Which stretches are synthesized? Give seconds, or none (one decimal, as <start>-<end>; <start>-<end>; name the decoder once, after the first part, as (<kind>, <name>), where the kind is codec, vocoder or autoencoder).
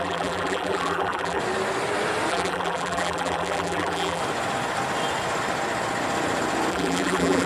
0.0-1.4 (vocoder, BigVGAN v2); 2.3-4.2; 6.7-7.5